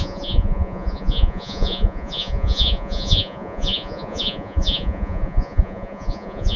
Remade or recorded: remade